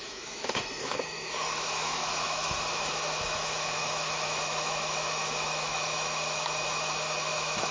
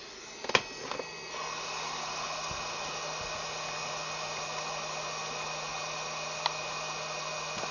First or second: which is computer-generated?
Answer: first